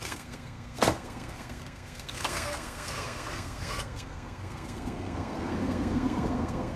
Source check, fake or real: fake